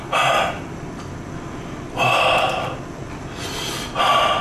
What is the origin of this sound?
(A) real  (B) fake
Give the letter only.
A